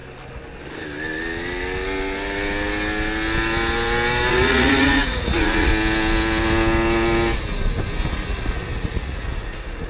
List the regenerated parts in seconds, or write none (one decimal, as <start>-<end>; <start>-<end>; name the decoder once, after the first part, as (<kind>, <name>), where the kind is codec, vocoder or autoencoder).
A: 4.3-5.7 (vocoder, Vocos); 8.1-9.9